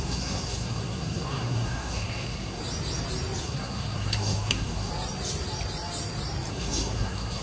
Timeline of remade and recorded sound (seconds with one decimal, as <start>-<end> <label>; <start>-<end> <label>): 0.0-2.6 remade; 2.6-3.4 recorded; 3.4-4.9 remade; 4.9-6.5 recorded; 6.5-7.4 remade